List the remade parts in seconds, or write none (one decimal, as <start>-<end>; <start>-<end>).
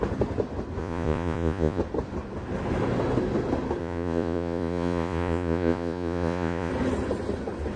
0.8-1.8; 3.8-6.7